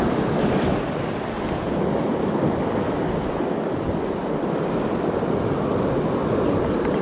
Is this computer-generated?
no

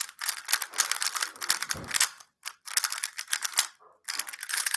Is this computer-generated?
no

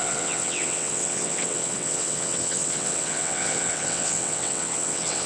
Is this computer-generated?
yes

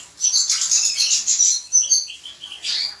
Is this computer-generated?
no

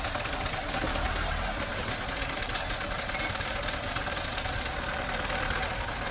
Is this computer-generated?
no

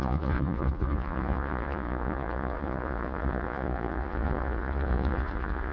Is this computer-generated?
yes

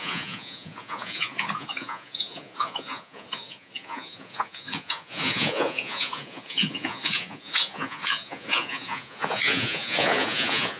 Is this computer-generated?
yes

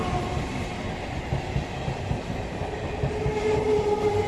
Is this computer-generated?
no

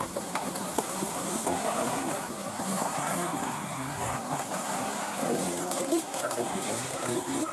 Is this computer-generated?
yes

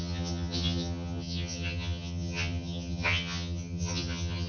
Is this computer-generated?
yes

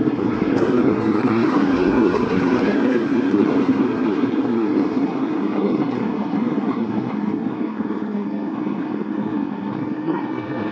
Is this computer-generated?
yes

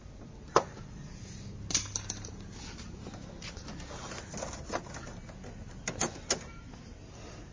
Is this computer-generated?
no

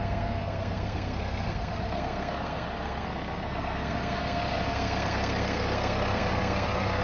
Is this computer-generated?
yes